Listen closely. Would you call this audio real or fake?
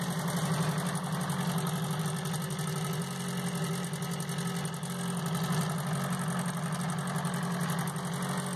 real